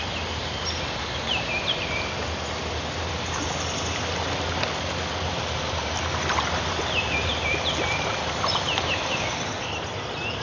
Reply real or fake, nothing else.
real